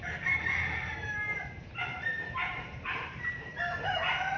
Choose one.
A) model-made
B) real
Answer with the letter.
A